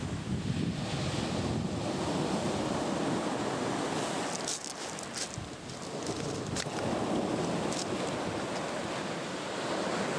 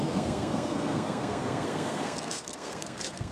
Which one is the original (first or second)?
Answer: first